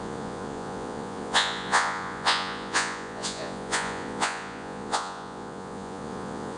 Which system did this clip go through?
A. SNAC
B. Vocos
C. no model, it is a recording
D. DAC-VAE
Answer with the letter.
B